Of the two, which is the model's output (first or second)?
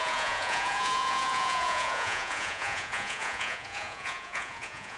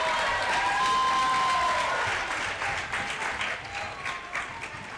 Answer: first